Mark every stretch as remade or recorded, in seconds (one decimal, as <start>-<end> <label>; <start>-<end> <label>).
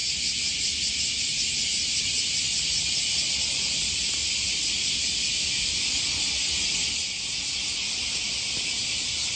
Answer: 0.0-9.4 recorded